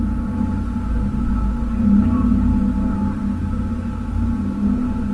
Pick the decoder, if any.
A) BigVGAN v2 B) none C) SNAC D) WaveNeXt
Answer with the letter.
B